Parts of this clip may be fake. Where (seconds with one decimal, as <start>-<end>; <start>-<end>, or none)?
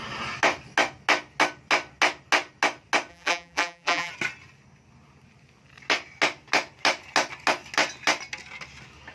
3.1-4.1